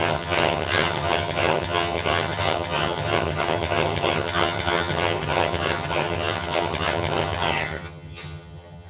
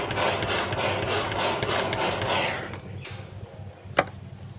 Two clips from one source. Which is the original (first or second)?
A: second